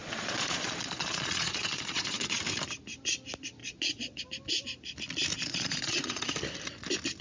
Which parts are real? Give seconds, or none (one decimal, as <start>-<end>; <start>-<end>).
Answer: 2.4-3.6; 4.2-5.3; 6.2-7.2

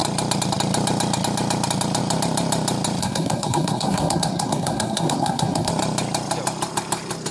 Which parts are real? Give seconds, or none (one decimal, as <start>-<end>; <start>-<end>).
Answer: 0.0-3.0; 5.7-7.3

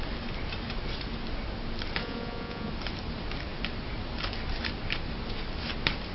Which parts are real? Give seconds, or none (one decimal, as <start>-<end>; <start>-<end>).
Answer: 0.0-2.0; 2.7-6.1

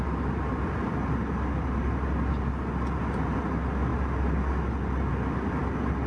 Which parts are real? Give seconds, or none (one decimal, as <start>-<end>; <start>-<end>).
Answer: 0.0-6.1

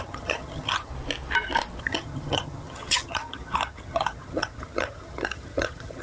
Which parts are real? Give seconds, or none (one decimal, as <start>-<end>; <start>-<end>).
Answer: 0.9-1.8